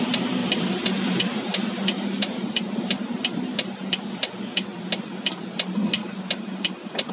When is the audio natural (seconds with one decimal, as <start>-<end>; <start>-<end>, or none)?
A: 0.0-0.4; 4.1-4.7; 5.4-6.0

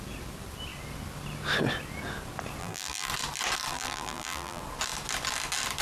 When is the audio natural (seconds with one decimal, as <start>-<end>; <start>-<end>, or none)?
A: 0.0-2.6; 3.1-3.7; 4.6-5.8

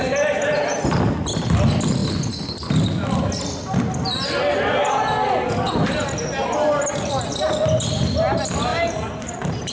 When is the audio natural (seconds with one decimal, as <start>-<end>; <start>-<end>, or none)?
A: 0.0-8.7

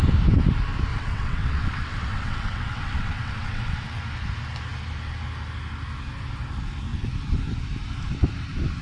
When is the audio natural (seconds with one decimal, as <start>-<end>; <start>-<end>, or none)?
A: 0.0-0.9; 4.0-8.8